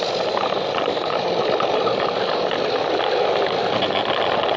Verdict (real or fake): real